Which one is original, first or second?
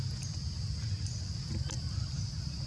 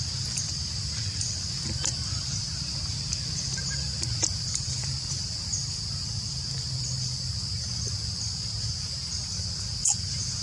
first